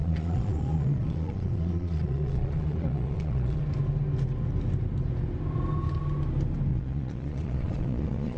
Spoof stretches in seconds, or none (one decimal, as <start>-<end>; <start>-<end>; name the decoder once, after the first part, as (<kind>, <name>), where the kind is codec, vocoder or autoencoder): 0.0-3.6 (vocoder, Vocos); 6.7-8.4